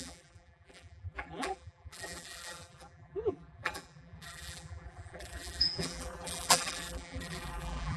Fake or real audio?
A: fake